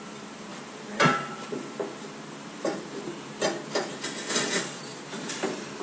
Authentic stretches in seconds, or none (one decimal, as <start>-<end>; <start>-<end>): 0.0-0.5; 4.0-4.9